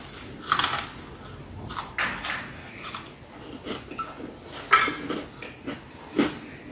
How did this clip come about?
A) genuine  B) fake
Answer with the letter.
A